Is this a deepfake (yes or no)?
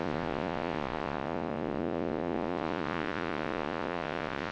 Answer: yes